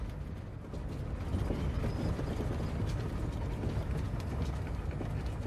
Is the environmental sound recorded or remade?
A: recorded